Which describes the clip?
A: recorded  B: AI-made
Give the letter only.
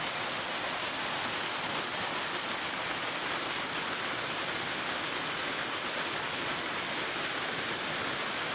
A